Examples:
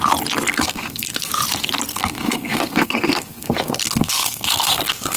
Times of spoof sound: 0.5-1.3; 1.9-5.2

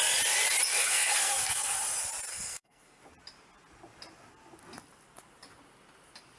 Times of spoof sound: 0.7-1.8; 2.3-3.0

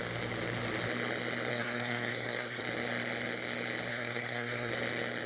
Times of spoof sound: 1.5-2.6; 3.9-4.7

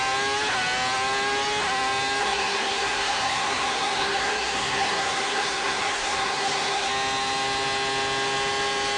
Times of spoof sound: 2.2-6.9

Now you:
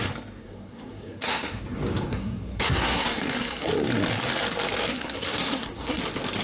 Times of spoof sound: 0.4-1.6; 2.1-3.7; 4.9-6.0

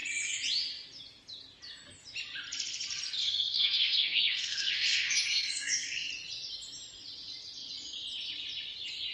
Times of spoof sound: 3.2-6.1